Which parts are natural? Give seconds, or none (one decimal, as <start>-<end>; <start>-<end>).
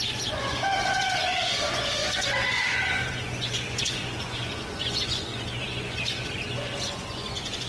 none